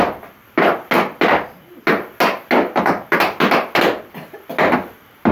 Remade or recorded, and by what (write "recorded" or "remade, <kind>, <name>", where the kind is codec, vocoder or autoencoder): recorded